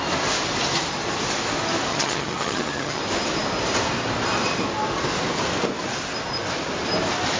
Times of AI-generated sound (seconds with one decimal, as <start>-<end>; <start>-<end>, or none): 1.9-3.0